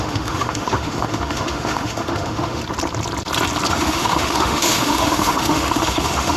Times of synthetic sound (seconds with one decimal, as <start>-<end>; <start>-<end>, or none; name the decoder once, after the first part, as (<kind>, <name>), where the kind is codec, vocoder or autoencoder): 0.0-2.6 (autoencoder, DAC-VAE); 3.7-6.4